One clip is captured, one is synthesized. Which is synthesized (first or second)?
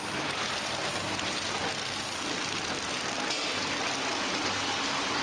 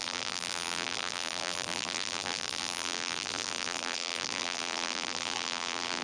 second